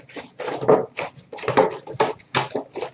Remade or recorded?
recorded